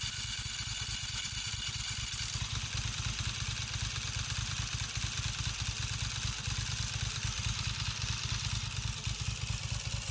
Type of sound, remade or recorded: recorded